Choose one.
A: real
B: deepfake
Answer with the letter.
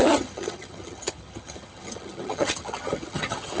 B